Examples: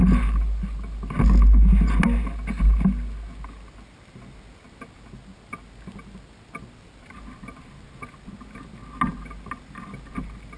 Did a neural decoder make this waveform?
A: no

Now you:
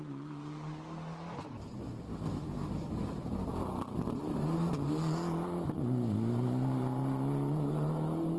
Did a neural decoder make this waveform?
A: no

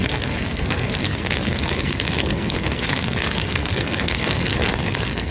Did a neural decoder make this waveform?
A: yes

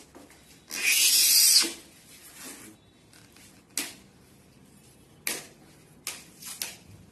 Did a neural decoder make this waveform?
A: no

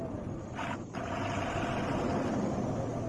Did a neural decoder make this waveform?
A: no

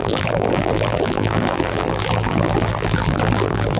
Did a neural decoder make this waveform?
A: yes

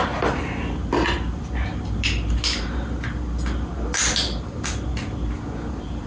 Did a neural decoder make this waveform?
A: no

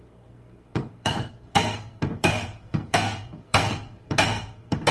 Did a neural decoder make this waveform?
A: yes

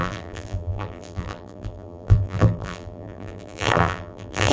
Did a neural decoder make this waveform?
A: yes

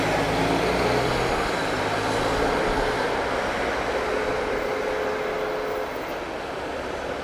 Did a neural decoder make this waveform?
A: no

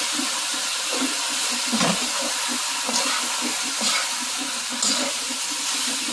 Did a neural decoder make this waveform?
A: yes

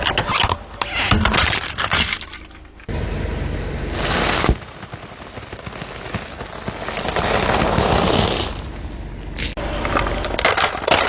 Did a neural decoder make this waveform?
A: no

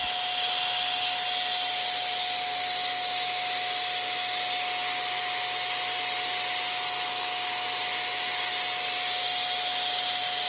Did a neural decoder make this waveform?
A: no